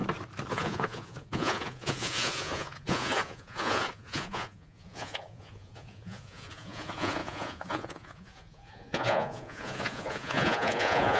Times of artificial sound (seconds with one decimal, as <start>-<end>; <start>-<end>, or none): 0.5-11.2